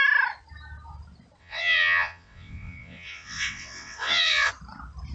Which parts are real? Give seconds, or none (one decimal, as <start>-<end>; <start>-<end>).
0.0-1.4; 4.5-5.1